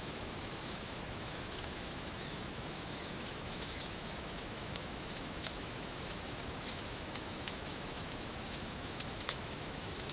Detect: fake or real fake